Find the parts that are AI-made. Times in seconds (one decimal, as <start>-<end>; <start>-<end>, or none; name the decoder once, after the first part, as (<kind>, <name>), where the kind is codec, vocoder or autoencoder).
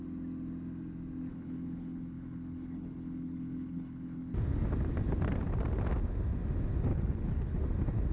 1.3-4.3 (codec, HILCodec); 6.9-7.6